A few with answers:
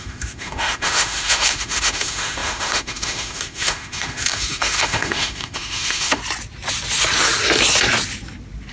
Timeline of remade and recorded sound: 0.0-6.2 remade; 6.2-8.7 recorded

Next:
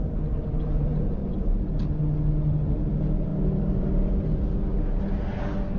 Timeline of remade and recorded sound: 0.0-5.8 recorded

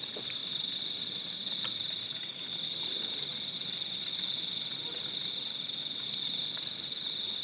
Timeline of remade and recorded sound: 0.0-7.4 recorded

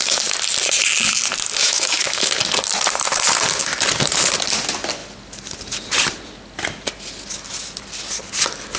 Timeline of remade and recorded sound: 0.0-1.6 recorded; 1.6-2.3 remade; 2.3-8.8 recorded